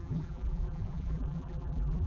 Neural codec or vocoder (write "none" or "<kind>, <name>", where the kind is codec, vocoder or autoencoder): vocoder, BigVGAN v2